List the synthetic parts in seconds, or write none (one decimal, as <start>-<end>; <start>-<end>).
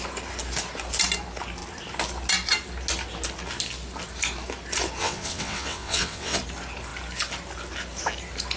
5.0-6.4